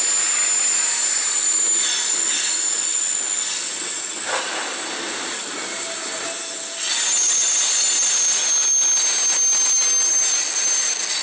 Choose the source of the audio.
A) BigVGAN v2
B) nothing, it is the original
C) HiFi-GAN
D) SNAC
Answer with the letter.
B